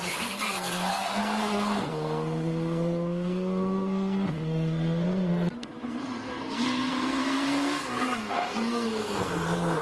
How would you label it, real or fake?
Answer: fake